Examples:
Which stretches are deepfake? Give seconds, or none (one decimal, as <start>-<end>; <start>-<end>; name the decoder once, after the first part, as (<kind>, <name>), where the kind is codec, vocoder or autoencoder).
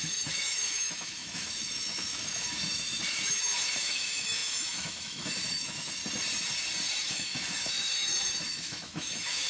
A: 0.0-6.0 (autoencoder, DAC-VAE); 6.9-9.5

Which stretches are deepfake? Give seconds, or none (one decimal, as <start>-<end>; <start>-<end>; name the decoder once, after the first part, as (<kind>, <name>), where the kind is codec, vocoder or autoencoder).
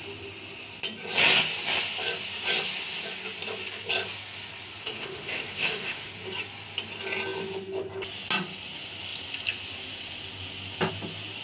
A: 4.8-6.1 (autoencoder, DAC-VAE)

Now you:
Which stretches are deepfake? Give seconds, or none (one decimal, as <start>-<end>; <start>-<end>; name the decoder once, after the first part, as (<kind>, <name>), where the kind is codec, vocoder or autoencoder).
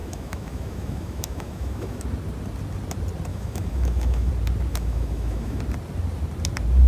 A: 0.0-2.0 (autoencoder, DAC-VAE); 3.3-4.3; 4.7-5.6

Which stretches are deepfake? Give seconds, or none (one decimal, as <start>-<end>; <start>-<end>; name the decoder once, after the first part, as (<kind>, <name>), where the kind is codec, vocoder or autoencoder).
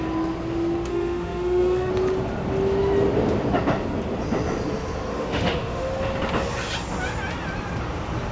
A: 0.9-1.9 (autoencoder, DAC-VAE); 5.1-5.9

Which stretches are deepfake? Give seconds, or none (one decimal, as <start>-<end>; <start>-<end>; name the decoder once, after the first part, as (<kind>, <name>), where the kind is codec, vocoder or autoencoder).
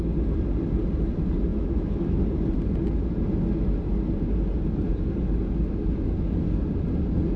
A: 1.5-2.2 (autoencoder, DAC-VAE)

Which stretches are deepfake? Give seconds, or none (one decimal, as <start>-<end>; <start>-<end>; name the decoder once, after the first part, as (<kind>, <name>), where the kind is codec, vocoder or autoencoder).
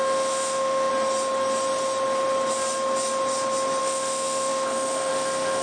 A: 0.0-0.9 (autoencoder, DAC-VAE); 3.8-5.6